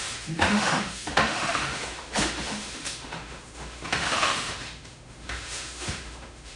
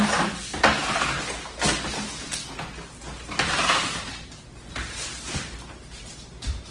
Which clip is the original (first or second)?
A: second